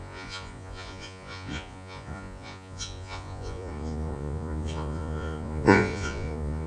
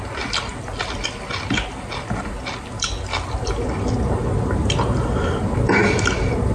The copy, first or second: first